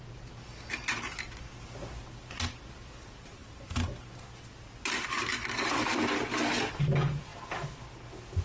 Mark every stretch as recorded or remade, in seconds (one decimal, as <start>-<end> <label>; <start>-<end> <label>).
0.0-8.4 recorded

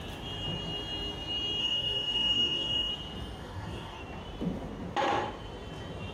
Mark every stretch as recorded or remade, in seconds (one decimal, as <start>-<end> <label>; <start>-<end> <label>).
0.0-1.6 recorded; 1.6-2.9 remade; 2.9-3.4 recorded; 3.4-4.0 remade; 4.0-6.1 recorded

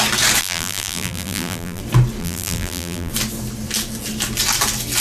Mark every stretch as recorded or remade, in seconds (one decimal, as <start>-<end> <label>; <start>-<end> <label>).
0.0-0.4 recorded; 0.4-1.8 remade; 1.8-2.2 recorded; 2.2-3.1 remade; 3.1-5.0 recorded